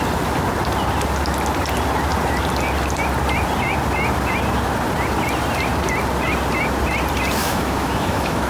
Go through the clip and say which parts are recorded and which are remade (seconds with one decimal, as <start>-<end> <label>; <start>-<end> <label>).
0.0-7.4 recorded; 7.4-8.5 remade

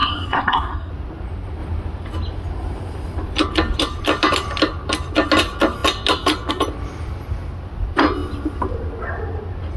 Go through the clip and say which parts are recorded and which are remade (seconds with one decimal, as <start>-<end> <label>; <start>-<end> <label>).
0.0-0.9 remade; 0.9-9.8 recorded

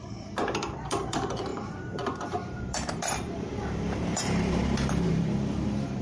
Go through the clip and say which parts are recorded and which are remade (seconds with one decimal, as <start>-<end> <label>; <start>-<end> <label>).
0.0-6.0 remade

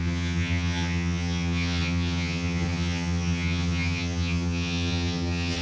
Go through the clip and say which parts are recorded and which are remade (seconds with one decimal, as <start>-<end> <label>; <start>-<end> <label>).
0.0-5.6 remade